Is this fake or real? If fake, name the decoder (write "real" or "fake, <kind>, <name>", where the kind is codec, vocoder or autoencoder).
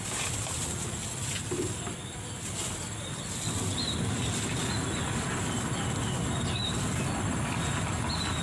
real